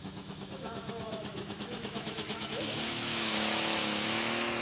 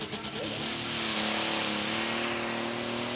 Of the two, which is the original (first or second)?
second